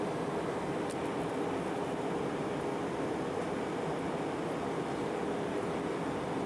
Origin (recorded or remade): recorded